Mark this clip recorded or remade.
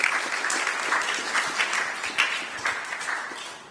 recorded